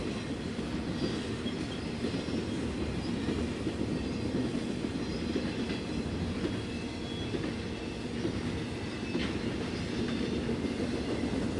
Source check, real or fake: real